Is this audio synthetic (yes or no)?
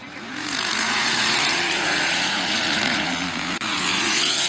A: yes